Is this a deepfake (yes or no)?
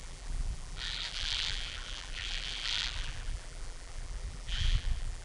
yes